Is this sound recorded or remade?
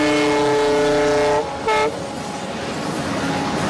recorded